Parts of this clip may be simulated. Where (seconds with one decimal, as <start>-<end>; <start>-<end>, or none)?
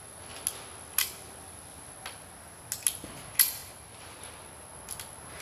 none